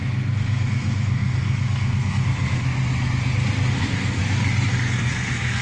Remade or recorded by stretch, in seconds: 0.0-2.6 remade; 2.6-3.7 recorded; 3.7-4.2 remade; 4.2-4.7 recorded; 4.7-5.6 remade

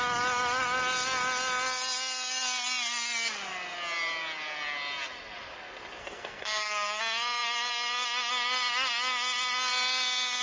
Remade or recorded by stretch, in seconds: 0.0-6.0 recorded; 6.0-7.0 remade; 7.0-10.4 recorded

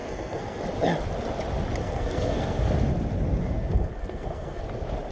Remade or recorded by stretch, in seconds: 0.0-0.6 remade; 0.6-1.8 recorded; 1.8-2.6 remade; 2.6-3.4 recorded; 3.4-4.6 remade; 4.6-5.1 recorded

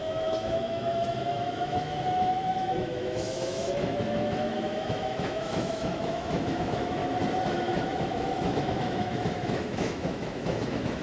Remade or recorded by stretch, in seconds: 0.0-7.0 remade; 7.0-7.5 recorded; 7.5-11.0 remade

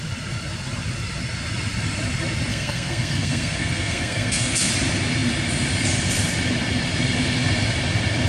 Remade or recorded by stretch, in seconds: 0.0-2.5 recorded; 2.5-4.7 remade; 4.7-8.3 recorded

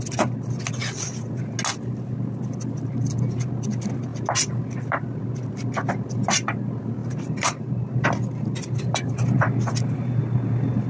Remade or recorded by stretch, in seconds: 0.0-7.0 recorded; 7.0-7.7 remade; 7.7-10.9 recorded